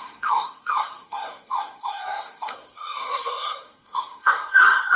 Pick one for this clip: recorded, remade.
remade